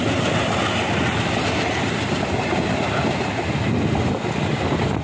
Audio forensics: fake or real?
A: real